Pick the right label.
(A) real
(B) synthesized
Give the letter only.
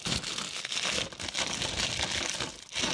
A